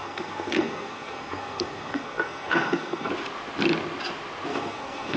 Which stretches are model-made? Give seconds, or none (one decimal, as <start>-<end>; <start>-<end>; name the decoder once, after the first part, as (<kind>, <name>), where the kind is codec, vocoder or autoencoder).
0.0-3.1 (codec, SNAC); 4.5-5.2